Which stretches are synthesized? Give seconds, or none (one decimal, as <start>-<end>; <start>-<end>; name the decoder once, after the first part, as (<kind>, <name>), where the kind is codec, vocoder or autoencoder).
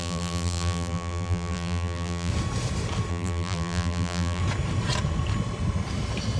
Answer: 0.0-2.3 (vocoder, BigVGAN v2); 3.1-4.4